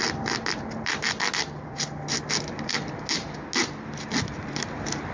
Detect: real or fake real